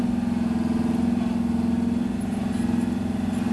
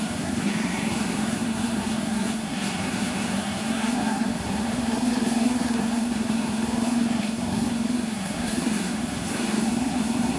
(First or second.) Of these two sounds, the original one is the first